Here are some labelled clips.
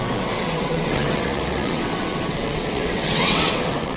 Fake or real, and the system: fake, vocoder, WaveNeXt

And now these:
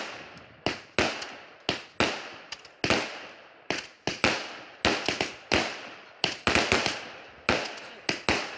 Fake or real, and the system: real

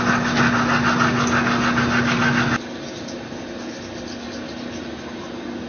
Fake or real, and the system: real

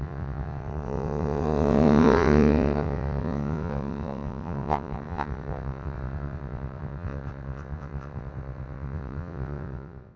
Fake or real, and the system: fake, vocoder, WaveNeXt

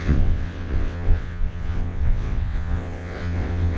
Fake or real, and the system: fake, vocoder, WaveNeXt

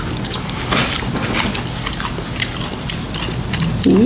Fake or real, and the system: real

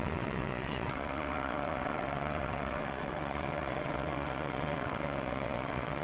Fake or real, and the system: fake, vocoder, WaveNeXt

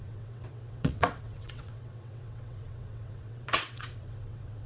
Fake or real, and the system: fake, vocoder, WaveNeXt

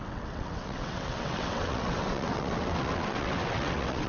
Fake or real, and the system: fake, vocoder, WaveNeXt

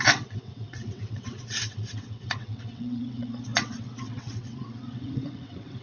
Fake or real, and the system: fake, vocoder, WaveNeXt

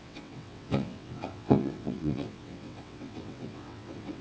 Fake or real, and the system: fake, vocoder, WaveNeXt